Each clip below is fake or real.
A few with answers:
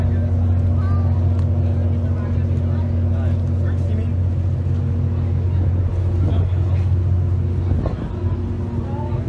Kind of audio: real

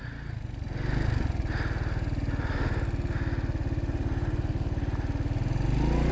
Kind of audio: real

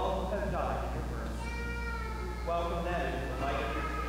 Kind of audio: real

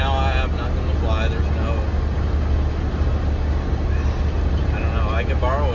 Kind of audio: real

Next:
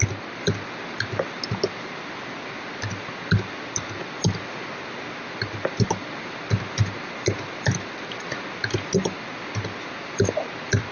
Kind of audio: real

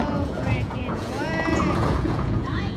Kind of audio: fake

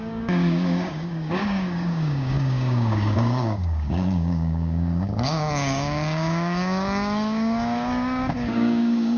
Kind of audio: fake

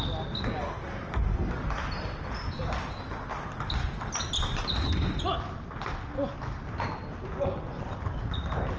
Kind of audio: real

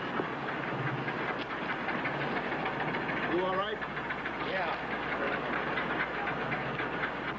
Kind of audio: real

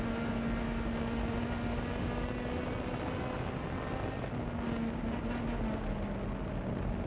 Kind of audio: real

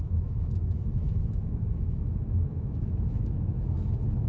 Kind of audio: fake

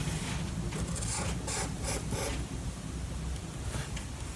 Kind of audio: real